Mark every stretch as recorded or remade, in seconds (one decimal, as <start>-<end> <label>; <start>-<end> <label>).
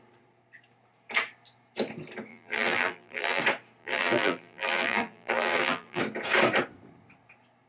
0.0-2.3 recorded; 2.3-3.4 remade; 3.4-3.8 recorded; 3.8-6.0 remade; 6.0-7.7 recorded